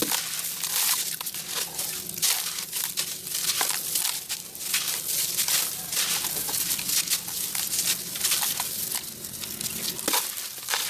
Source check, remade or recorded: recorded